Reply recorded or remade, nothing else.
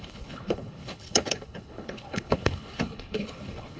remade